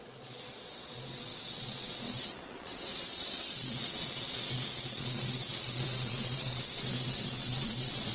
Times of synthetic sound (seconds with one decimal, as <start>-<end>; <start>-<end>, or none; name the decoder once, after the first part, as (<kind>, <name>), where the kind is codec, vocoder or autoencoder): 0.0-8.1 (vocoder, Vocos)